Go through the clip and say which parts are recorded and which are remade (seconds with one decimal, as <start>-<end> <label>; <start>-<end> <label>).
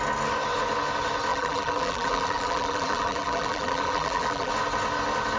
0.0-1.3 recorded; 1.3-4.5 remade; 4.5-5.4 recorded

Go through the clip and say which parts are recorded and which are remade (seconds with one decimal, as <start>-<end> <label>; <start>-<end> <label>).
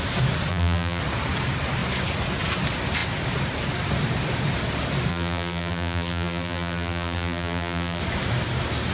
0.0-0.5 recorded; 0.5-1.0 remade; 1.0-5.1 recorded; 5.1-8.0 remade; 8.0-8.9 recorded